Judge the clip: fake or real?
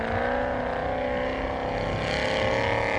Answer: real